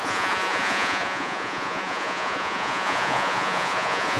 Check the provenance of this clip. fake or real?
fake